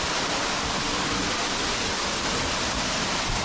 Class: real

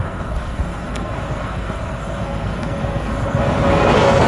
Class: fake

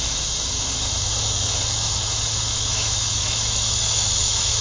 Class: fake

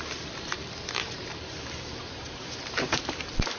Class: fake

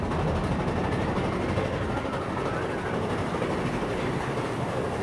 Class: real